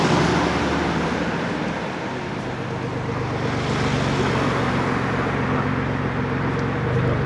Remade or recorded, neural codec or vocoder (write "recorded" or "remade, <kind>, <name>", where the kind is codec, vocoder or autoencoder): recorded